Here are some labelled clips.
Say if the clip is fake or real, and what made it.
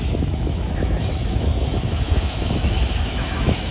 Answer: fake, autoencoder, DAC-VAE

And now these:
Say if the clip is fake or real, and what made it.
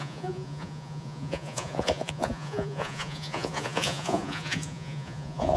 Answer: fake, vocoder, Vocos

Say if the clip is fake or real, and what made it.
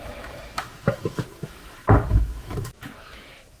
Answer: fake, autoencoder, DAC-VAE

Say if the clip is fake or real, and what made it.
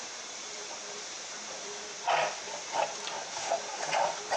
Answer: fake, vocoder, BigVGAN v2